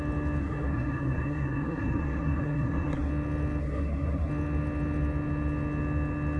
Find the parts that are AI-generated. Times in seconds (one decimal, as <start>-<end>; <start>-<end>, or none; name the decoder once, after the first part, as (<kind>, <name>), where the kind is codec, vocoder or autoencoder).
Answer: 0.4-3.1 (codec, SNAC); 3.6-4.3